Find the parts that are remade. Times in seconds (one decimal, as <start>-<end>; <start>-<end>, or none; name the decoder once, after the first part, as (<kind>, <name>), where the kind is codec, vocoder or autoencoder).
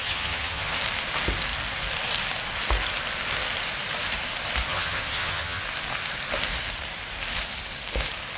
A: 0.0-0.7 (vocoder, HiFi-GAN); 4.7-5.6